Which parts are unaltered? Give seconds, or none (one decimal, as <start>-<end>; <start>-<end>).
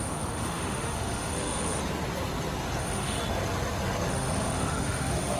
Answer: 1.8-2.8; 3.2-4.1